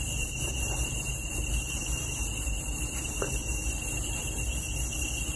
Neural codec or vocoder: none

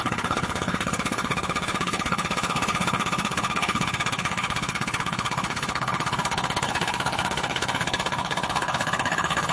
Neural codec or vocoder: codec, HILCodec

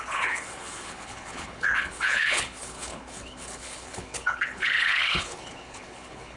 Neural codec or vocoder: codec, HILCodec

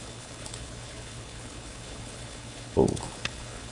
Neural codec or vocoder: codec, HILCodec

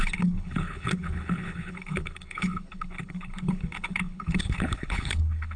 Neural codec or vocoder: codec, HILCodec